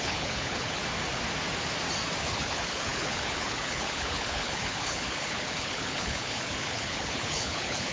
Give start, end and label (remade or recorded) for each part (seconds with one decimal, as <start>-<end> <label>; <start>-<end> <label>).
0.0-0.8 remade; 0.8-2.2 recorded; 2.2-7.9 remade